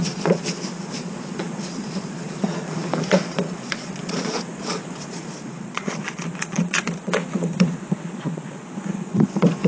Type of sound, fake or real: fake